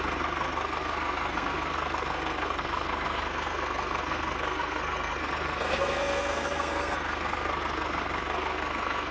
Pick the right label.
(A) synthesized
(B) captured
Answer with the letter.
A